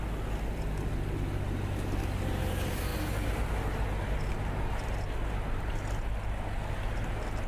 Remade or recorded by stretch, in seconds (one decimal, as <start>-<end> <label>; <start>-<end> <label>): 0.0-7.5 recorded